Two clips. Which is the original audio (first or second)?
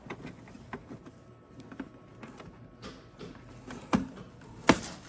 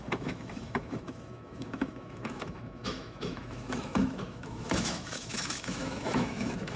first